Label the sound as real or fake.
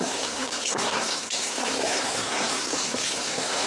fake